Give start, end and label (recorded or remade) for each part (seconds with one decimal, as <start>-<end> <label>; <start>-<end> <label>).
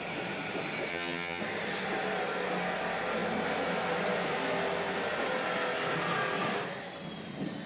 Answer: 0.0-0.9 recorded; 0.9-1.4 remade; 1.4-7.7 recorded